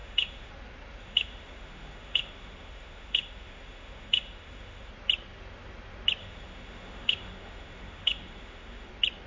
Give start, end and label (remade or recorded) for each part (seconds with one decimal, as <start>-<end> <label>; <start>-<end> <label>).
0.0-0.5 remade; 0.5-1.0 recorded; 1.0-4.9 remade; 4.9-6.2 recorded; 6.2-8.9 remade; 8.9-9.3 recorded